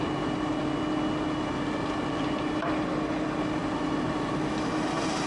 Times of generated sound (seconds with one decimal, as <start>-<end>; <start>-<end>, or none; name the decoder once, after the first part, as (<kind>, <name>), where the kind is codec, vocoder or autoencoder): none